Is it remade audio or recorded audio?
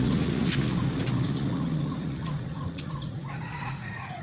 remade